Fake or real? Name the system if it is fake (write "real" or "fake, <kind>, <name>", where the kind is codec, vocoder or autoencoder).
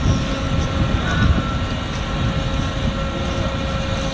real